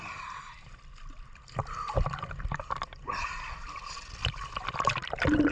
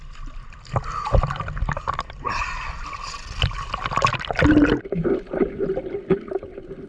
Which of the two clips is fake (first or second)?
first